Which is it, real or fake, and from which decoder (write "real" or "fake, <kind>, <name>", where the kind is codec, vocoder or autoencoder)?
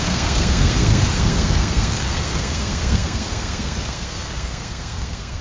fake, codec, SNAC